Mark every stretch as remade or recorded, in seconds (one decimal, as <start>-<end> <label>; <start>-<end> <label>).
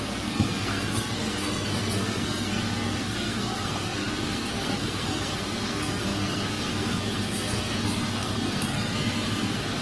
0.0-9.8 remade